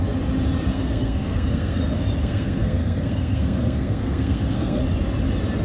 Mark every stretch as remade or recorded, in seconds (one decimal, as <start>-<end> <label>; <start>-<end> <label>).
0.0-0.7 recorded; 0.7-1.8 remade; 1.8-2.2 recorded; 2.2-4.8 remade; 4.8-5.6 recorded